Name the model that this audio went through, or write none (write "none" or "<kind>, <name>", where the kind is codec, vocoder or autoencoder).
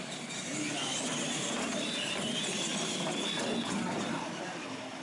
none